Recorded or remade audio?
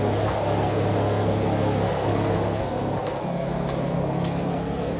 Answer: remade